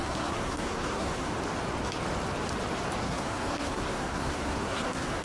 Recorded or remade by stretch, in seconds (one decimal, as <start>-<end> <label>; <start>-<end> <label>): 0.0-1.3 remade; 1.3-3.0 recorded; 3.0-5.2 remade